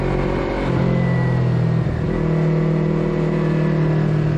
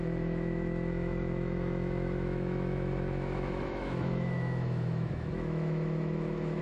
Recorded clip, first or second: first